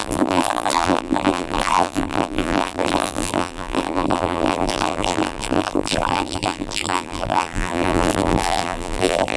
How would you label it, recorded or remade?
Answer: remade